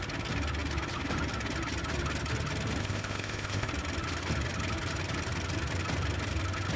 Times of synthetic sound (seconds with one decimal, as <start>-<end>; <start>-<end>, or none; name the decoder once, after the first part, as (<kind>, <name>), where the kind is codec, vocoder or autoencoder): 2.8-3.7 (codec, ZipCodec)